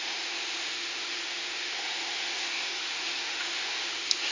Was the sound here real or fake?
fake